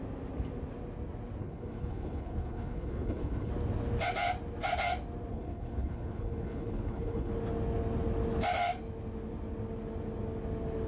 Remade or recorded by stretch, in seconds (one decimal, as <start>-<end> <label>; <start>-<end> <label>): 0.0-1.4 recorded; 1.4-3.5 remade; 3.5-5.3 recorded; 5.3-7.3 remade; 7.3-10.9 recorded